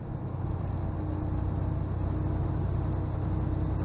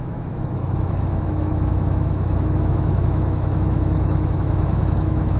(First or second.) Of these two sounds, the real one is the first